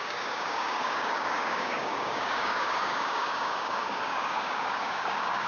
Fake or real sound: fake